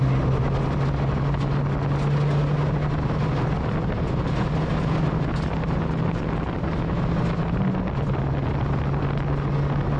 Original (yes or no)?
yes